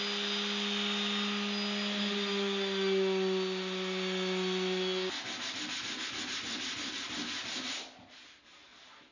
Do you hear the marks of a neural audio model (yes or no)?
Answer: no